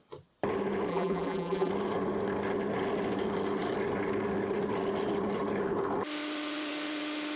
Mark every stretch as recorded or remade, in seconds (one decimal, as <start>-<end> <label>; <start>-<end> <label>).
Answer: 0.0-0.9 recorded; 0.9-1.7 remade; 1.7-7.4 recorded